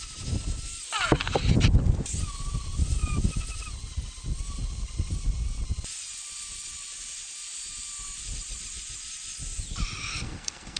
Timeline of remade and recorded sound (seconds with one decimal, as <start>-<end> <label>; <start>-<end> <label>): 0.0-10.0 recorded; 10.0-10.8 remade